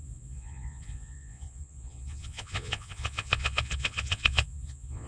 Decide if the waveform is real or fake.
fake